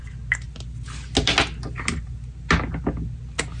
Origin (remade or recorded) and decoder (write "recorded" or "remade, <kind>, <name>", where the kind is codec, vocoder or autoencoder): recorded